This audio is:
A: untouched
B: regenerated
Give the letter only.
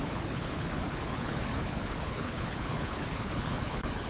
B